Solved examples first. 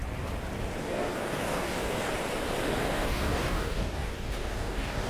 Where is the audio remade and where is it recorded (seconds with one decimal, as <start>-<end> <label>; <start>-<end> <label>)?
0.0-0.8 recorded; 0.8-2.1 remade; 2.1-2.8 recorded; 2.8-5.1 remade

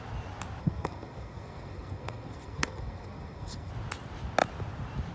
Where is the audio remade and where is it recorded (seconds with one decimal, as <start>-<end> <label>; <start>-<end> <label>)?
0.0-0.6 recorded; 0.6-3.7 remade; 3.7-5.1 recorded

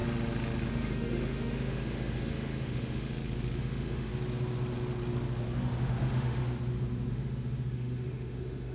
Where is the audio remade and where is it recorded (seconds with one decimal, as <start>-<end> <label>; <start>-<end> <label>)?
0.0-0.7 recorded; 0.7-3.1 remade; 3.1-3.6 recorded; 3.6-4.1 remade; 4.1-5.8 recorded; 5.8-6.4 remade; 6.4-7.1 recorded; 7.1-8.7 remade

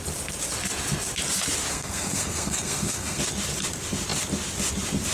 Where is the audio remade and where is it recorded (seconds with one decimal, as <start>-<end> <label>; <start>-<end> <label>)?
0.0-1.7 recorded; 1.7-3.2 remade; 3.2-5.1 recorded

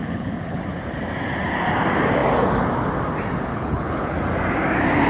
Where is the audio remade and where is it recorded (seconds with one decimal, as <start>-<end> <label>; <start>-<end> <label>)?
0.0-0.6 remade; 0.6-3.5 recorded; 3.5-4.2 remade; 4.2-5.1 recorded

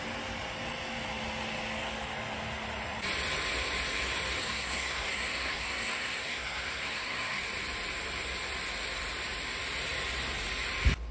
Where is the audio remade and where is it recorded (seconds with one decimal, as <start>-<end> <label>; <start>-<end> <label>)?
0.0-4.4 recorded; 4.4-7.4 remade; 7.4-11.1 recorded

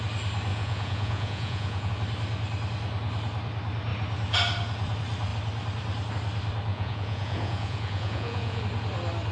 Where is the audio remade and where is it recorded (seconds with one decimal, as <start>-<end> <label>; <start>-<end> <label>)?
0.0-0.5 recorded; 0.5-1.9 remade; 1.9-6.7 recorded; 6.7-8.6 remade; 8.6-9.3 recorded

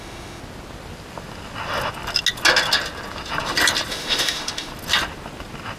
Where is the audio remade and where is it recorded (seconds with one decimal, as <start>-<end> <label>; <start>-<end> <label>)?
0.0-0.4 remade; 0.4-3.9 recorded; 3.9-4.7 remade; 4.7-5.8 recorded